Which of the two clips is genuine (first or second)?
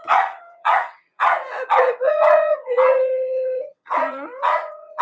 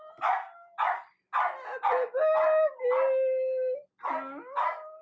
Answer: second